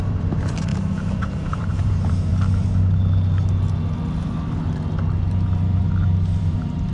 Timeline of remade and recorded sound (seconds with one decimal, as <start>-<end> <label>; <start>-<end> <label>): 0.0-0.7 remade; 0.7-1.3 recorded; 1.3-2.3 remade; 2.3-6.4 recorded; 6.4-6.9 remade

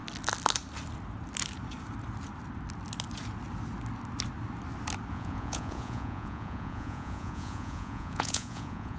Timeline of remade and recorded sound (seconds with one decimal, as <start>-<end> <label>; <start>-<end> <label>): 0.0-5.1 recorded; 5.1-9.0 remade

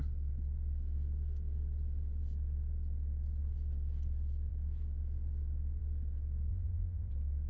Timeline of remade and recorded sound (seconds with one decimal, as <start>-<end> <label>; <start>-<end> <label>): 0.0-6.5 recorded; 6.5-7.1 remade; 7.1-7.5 recorded

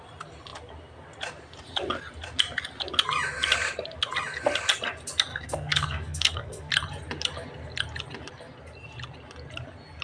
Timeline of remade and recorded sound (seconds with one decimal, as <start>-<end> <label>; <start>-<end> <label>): 0.0-5.3 recorded; 5.3-6.7 remade; 6.7-10.0 recorded